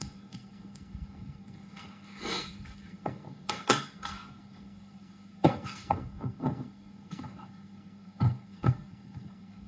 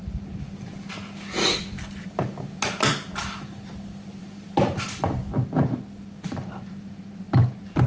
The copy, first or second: first